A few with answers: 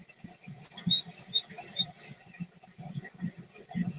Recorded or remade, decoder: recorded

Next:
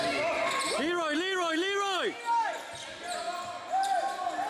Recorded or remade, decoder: recorded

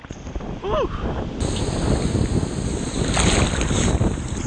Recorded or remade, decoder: recorded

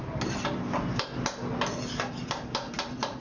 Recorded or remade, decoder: recorded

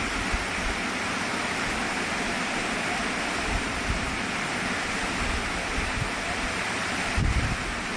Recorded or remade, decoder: recorded